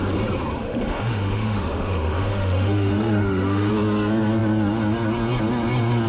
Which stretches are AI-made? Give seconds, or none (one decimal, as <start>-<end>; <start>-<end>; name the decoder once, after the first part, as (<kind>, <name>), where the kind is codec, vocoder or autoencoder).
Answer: 0.5-3.7 (autoencoder, DAC-VAE)